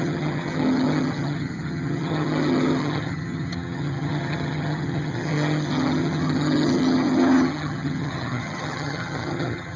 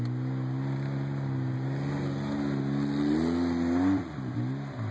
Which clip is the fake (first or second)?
first